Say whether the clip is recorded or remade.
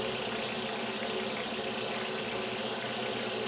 recorded